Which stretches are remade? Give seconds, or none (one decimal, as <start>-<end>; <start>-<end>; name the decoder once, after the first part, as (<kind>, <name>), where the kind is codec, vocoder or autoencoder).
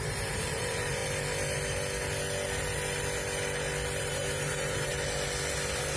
0.0-1.0 (vocoder, BigVGAN v2); 4.1-4.9